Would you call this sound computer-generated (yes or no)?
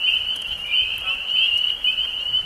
no